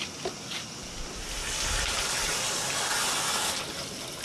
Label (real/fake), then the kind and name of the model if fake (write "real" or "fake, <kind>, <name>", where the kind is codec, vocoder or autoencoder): real